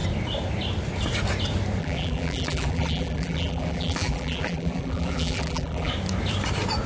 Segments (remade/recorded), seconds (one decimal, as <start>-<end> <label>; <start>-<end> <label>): 0.0-1.8 recorded; 1.8-5.9 remade; 5.9-6.9 recorded

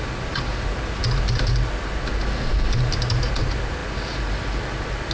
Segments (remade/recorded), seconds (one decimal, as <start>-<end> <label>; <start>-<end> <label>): 0.0-5.1 recorded

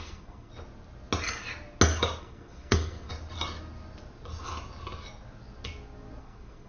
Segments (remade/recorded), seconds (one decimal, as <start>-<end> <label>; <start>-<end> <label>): 0.0-0.5 remade; 0.5-2.2 recorded; 2.2-3.1 remade; 3.1-6.2 recorded; 6.2-6.7 remade

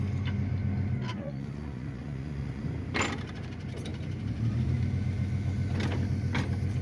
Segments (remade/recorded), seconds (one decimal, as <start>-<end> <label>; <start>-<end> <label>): 0.0-1.1 recorded; 1.1-2.6 remade; 2.6-6.8 recorded

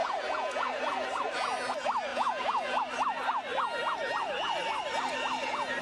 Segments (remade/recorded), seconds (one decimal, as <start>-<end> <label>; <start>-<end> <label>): 0.0-0.8 remade; 0.8-2.1 recorded; 2.1-2.8 remade; 2.8-5.8 recorded

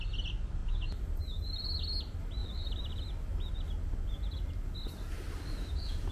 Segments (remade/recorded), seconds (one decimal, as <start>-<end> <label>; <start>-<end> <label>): 0.0-2.4 recorded; 2.4-3.0 remade; 3.0-6.1 recorded